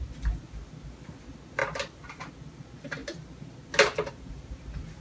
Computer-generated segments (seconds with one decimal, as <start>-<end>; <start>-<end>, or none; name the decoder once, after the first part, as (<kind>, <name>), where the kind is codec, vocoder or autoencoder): none